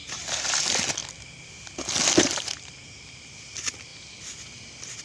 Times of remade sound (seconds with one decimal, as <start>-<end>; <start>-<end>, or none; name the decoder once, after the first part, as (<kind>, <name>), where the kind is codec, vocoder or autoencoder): 0.0-1.0 (vocoder, BigVGAN v2); 2.2-3.9